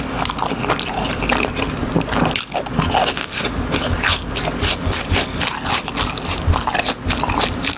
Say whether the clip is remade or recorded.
recorded